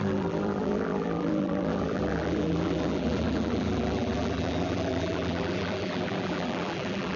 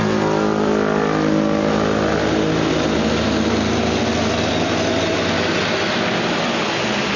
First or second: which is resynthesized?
first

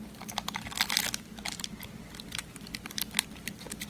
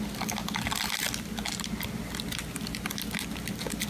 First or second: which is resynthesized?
first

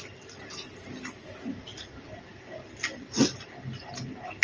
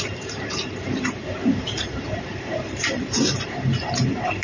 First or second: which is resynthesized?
second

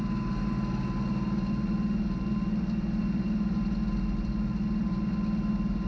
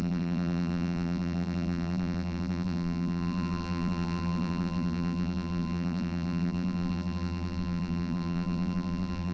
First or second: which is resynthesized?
second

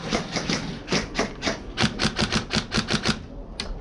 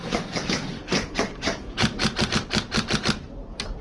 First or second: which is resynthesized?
second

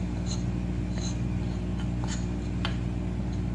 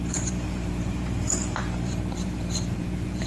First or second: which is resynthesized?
second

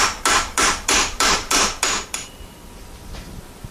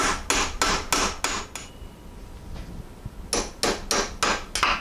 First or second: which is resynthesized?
first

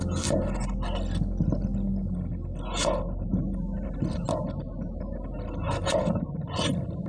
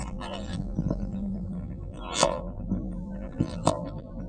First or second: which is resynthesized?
second